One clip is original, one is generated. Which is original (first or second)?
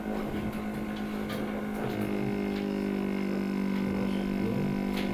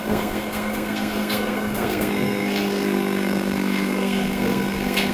first